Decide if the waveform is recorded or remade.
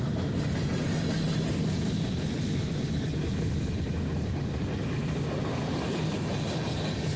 recorded